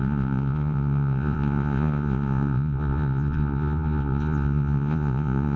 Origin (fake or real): fake